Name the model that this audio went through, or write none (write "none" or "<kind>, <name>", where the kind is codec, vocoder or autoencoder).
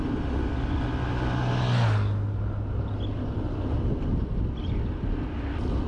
none